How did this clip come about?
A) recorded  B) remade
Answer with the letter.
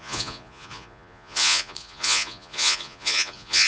B